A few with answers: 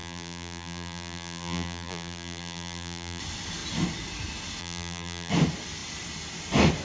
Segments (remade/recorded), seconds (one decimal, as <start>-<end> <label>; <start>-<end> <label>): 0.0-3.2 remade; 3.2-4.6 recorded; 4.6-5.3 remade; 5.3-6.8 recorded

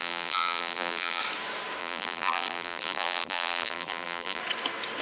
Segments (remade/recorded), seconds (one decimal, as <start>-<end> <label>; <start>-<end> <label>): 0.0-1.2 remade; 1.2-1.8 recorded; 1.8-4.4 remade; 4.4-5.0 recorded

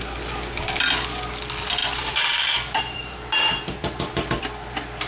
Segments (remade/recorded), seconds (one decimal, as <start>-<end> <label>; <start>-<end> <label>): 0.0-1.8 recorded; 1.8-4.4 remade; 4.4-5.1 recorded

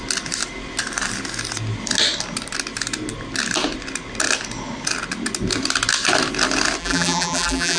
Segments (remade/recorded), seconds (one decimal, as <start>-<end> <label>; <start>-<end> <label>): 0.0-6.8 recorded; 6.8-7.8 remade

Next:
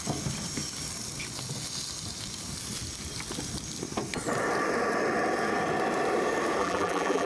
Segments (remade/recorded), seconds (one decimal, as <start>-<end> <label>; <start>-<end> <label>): 0.0-6.6 recorded; 6.6-7.3 remade

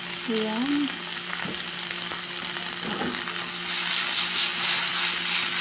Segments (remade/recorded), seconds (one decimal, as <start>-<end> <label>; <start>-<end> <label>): 0.0-1.1 recorded; 1.1-4.0 remade; 4.0-5.6 recorded